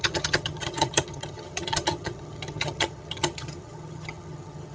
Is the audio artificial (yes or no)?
yes